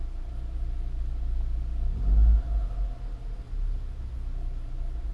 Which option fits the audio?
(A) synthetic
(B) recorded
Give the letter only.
B